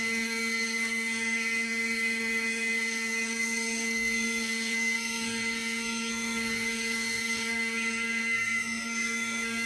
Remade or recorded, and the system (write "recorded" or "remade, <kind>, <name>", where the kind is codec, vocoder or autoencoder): remade, codec, SNAC